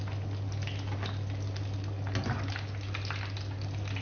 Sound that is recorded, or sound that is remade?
recorded